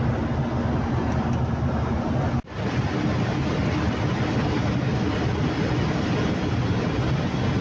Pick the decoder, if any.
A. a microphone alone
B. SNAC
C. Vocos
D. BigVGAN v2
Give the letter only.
A